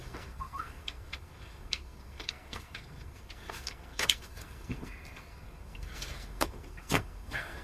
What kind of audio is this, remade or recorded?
remade